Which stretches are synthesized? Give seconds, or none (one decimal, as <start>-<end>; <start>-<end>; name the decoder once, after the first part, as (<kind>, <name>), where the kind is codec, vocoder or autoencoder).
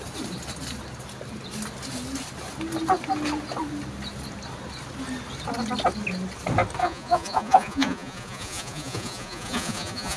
6.8-10.2 (vocoder, Vocos)